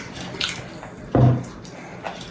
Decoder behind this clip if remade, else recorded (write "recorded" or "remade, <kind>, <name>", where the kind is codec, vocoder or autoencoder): recorded